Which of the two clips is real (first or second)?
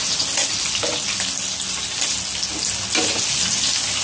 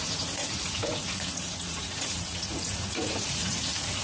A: first